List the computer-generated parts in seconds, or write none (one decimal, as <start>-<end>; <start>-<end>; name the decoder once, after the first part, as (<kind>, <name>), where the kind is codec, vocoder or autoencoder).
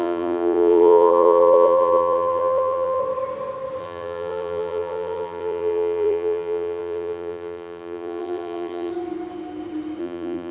0.0-3.0 (vocoder, BigVGAN v2); 3.8-8.9; 10.0-10.5